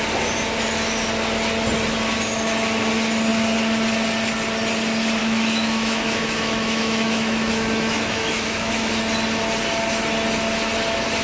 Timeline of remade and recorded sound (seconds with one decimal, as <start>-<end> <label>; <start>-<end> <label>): 0.0-5.2 recorded; 5.2-8.9 remade; 8.9-11.2 recorded